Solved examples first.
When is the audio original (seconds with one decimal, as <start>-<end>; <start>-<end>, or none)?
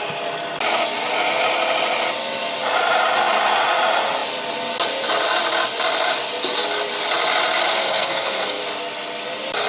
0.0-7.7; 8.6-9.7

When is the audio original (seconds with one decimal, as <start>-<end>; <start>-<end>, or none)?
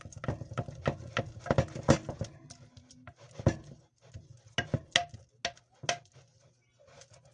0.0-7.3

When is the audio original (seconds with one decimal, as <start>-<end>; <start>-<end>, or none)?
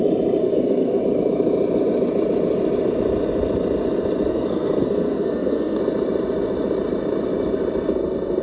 0.0-0.4; 1.0-4.3; 5.8-8.4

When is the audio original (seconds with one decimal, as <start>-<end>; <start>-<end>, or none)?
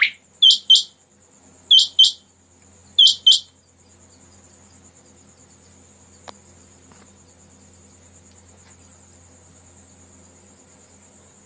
0.0-11.5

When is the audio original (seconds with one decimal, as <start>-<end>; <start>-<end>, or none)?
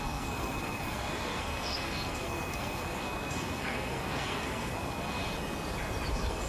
5.2-6.1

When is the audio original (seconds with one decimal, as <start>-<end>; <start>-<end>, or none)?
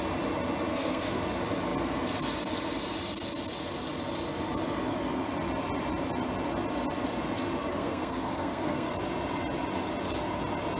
0.0-0.7; 1.2-7.7; 8.9-10.8